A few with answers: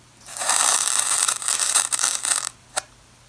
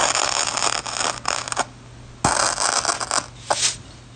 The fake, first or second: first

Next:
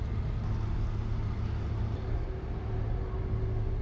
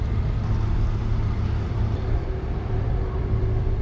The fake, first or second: second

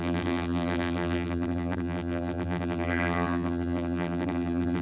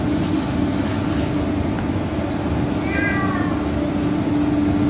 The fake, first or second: first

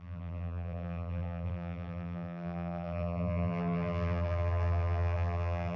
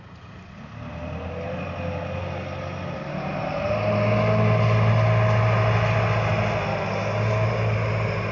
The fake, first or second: first